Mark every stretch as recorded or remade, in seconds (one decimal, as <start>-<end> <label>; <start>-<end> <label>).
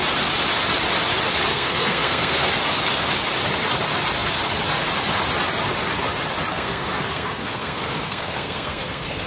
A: 0.0-1.5 recorded; 1.5-2.5 remade; 2.5-6.5 recorded; 6.5-9.3 remade